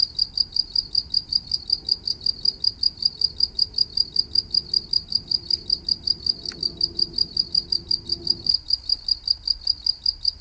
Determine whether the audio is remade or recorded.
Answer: recorded